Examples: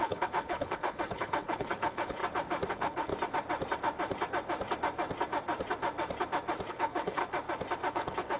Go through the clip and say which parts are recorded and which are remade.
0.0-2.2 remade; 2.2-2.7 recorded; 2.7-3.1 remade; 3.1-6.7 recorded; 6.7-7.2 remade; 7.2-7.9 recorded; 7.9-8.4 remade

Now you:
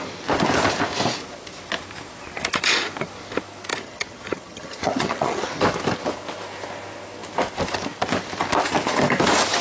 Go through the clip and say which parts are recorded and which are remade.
0.0-3.7 recorded; 3.7-5.5 remade; 5.5-9.6 recorded

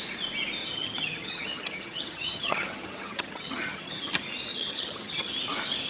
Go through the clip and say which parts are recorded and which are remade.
0.0-0.6 recorded; 0.6-4.1 remade; 4.1-4.5 recorded; 4.5-5.3 remade; 5.3-5.9 recorded

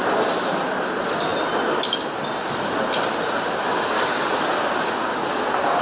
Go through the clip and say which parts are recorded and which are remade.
0.0-5.8 recorded

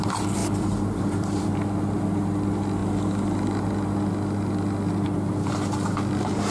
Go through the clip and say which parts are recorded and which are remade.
0.0-0.4 recorded; 0.4-1.5 remade; 1.5-6.5 recorded

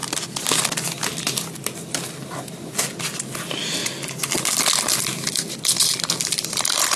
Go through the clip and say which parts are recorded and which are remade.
0.0-7.0 recorded

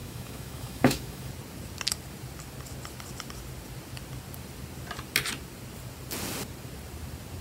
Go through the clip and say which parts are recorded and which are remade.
0.0-1.3 remade; 1.3-7.4 recorded